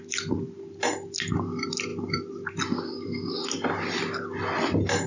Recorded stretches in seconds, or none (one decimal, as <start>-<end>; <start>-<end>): 0.0-5.1